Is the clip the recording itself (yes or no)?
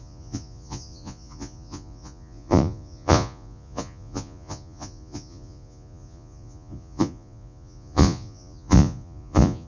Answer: no